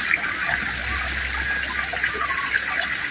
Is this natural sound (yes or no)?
yes